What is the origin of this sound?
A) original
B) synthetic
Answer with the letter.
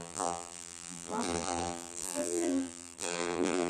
B